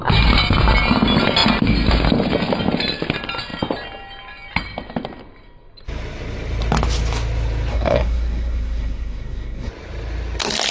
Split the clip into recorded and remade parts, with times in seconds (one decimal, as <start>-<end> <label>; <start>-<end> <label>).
0.0-7.7 recorded; 7.7-9.7 remade; 9.7-10.7 recorded